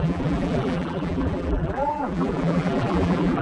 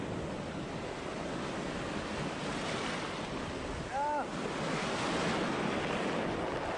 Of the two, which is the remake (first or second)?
first